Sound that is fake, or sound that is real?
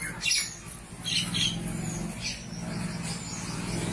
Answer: real